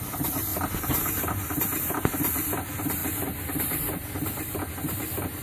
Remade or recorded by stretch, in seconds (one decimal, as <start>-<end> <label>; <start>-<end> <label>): 0.0-5.4 recorded